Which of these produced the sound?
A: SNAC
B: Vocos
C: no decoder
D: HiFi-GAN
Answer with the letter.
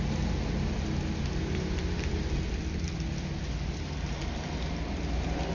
C